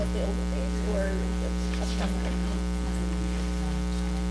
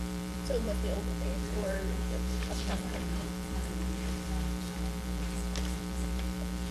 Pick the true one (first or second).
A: first